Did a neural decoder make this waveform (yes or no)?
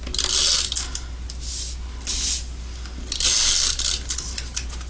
no